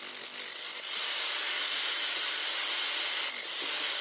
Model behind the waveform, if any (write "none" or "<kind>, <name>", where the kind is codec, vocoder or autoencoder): vocoder, BigVGAN v2